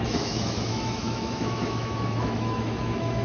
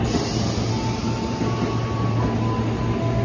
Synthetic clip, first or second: first